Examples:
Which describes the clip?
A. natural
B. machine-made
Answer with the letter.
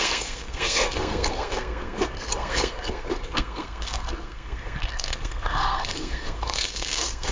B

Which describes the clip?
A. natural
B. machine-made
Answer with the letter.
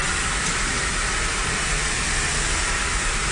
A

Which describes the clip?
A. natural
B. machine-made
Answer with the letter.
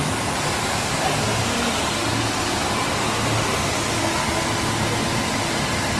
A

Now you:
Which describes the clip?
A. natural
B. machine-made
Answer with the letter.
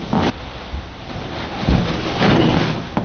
A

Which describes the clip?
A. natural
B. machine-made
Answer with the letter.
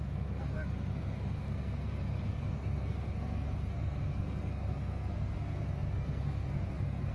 B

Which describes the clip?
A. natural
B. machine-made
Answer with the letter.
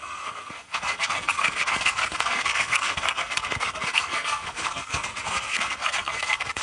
B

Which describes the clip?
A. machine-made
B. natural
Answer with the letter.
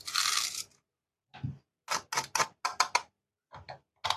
B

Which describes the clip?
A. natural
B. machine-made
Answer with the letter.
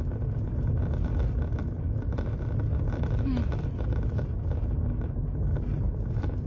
A